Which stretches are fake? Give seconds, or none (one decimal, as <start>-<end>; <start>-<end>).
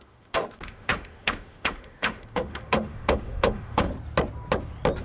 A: 0.0-3.9